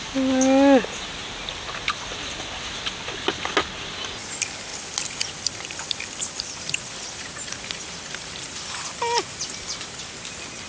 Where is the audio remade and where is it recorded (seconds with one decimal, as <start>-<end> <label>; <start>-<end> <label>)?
0.0-4.7 recorded; 4.7-10.0 remade; 10.0-10.7 recorded